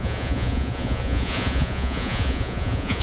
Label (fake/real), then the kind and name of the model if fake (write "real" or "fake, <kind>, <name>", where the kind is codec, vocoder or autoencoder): fake, vocoder, Vocos